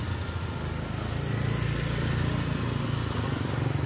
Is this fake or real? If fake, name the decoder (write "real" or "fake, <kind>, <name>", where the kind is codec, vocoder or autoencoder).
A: real